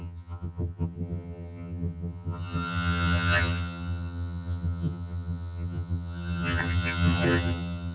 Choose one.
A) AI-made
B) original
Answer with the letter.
A